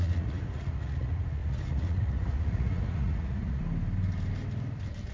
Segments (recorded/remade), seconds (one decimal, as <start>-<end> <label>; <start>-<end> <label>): 0.0-3.6 remade; 3.6-5.1 recorded